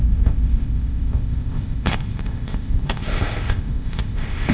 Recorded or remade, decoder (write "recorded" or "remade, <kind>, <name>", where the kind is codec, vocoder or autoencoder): remade, codec, ZipCodec